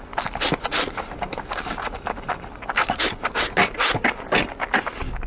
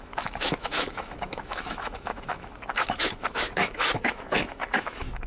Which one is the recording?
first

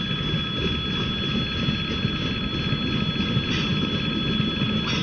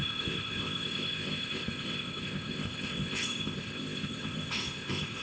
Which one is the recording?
first